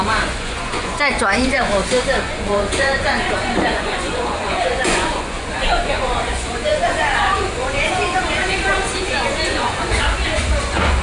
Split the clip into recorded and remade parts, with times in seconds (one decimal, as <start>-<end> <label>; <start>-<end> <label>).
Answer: 0.0-1.7 remade; 1.7-2.2 recorded; 2.2-8.4 remade; 8.4-9.0 recorded; 9.0-11.0 remade